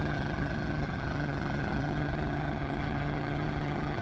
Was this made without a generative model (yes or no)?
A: no